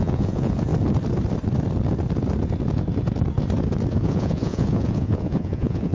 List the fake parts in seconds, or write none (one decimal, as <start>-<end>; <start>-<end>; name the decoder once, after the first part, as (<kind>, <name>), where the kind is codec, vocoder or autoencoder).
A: 0.0-0.7 (vocoder, Vocos); 3.9-5.9

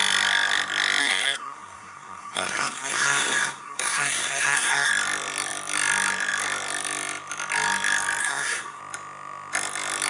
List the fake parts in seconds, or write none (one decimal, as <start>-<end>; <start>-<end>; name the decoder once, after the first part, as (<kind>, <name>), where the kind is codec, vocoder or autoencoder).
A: 1.0-4.9 (codec, SNAC); 8.2-8.8

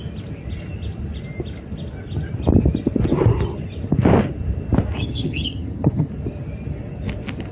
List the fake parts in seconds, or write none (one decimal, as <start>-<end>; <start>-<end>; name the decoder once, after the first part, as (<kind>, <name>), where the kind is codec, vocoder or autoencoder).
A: 5.0-6.1 (vocoder, HiFi-GAN)

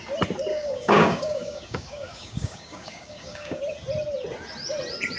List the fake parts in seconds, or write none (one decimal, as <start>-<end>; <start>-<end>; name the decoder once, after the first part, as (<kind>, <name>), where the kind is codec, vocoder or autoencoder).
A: 0.5-3.6 (codec, DAC)